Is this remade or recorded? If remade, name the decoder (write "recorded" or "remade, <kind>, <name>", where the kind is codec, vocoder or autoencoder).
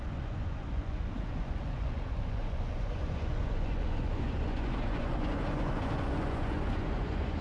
remade, vocoder, Vocos